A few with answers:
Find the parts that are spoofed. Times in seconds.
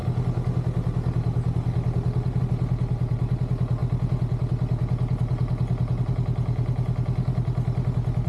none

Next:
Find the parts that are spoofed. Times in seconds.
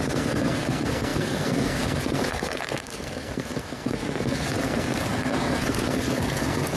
0.0-6.8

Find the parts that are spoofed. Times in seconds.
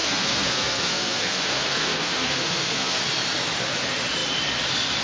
0.0-3.0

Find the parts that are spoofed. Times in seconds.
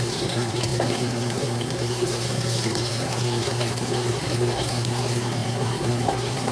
0.0-6.5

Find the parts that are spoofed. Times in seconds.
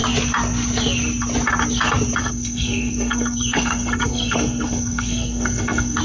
2.2-6.0